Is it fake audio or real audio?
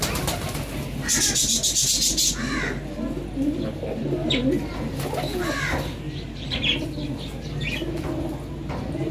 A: real